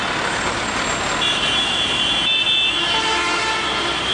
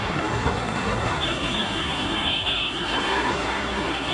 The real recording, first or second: first